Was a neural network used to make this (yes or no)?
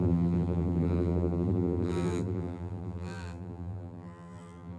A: yes